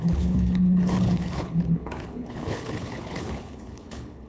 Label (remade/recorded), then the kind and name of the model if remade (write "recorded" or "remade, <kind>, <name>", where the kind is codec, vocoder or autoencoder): remade, codec, HILCodec